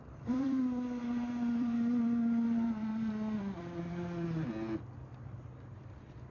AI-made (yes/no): yes